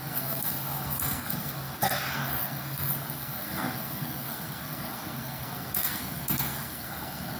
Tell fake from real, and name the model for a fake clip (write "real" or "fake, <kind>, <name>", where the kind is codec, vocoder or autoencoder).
fake, codec, SNAC